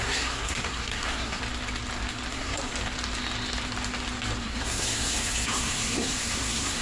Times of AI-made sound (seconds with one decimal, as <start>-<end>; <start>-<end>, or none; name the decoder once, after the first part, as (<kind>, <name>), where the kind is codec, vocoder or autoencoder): 0.0-1.4 (codec, SNAC); 2.3-2.7; 4.4-6.8